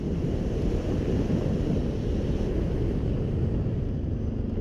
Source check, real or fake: real